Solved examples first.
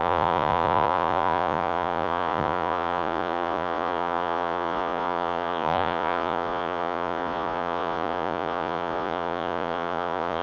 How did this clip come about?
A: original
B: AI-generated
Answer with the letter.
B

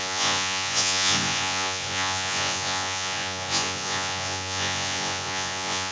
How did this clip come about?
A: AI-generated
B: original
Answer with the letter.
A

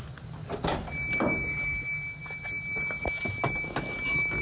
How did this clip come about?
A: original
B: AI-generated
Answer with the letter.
A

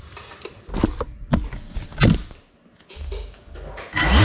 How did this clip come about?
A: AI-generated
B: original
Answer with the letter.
B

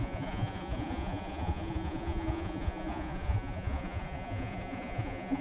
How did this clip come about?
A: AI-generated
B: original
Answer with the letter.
A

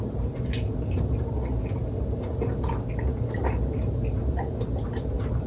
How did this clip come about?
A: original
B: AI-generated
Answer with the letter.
B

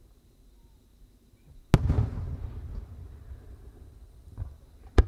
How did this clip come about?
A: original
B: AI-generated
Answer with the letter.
A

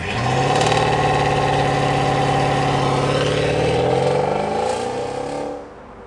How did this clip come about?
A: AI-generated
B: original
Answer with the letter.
B